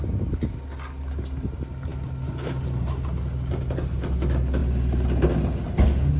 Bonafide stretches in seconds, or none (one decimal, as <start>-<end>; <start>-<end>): 0.0-6.2